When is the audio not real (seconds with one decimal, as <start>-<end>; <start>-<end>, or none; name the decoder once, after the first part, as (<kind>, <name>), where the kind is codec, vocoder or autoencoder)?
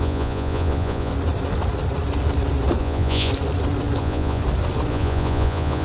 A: 0.0-1.1 (vocoder, Vocos); 2.8-3.3; 4.0-4.4; 4.9-5.8